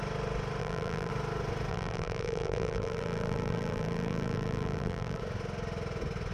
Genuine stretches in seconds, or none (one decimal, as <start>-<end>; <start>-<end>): 0.0-0.6; 1.1-1.7; 5.2-6.3